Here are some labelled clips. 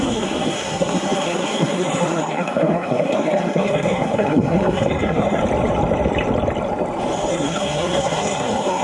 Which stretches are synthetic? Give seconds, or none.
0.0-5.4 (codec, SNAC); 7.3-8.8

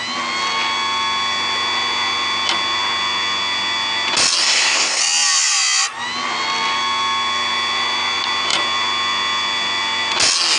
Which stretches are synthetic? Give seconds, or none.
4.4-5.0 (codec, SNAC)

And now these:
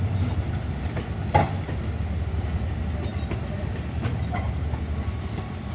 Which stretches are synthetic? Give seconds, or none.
none

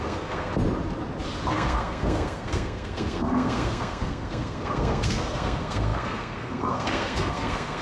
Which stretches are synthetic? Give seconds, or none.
0.0-0.5 (codec, SNAC); 1.5-7.8